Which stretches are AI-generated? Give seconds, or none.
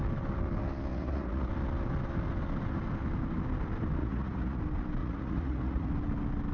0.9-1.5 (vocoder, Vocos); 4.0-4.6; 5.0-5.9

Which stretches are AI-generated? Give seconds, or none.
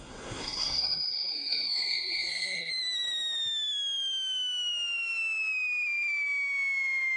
0.0-2.7 (codec, SNAC)